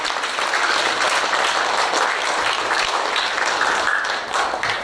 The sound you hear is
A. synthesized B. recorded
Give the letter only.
B